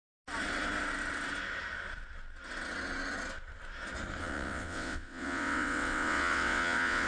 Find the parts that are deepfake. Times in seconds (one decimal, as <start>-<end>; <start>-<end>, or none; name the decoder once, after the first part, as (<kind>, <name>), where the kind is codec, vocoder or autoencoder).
4.2-7.1 (vocoder, WaveNeXt)